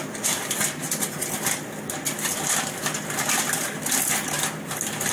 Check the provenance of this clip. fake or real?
real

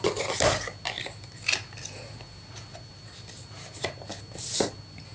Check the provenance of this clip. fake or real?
real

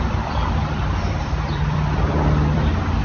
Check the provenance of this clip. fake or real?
fake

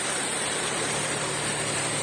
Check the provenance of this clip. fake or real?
fake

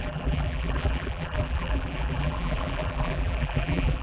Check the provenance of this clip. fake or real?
fake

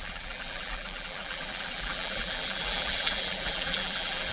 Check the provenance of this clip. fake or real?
fake